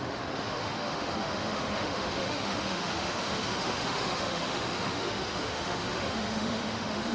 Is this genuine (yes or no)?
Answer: no